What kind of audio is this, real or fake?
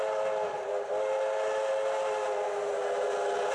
real